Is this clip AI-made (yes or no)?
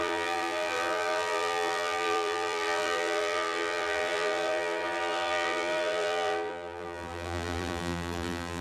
yes